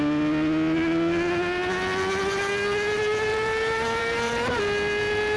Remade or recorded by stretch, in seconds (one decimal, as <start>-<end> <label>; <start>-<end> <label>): 0.0-3.3 recorded; 3.3-4.6 remade; 4.6-5.4 recorded